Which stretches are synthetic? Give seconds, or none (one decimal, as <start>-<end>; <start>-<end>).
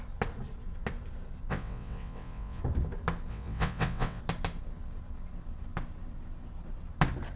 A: 1.5-2.6; 3.3-4.2